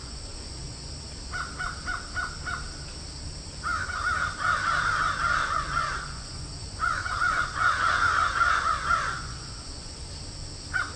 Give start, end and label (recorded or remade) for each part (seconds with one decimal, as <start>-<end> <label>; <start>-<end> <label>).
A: 0.0-0.9 remade; 0.9-5.4 recorded; 5.4-10.1 remade; 10.1-11.0 recorded